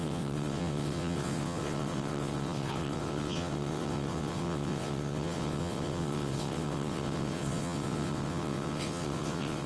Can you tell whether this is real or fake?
fake